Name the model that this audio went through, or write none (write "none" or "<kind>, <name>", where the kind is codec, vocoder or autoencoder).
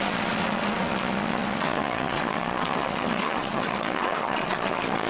vocoder, Vocos